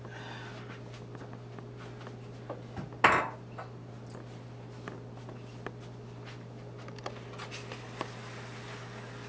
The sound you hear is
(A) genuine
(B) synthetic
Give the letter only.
A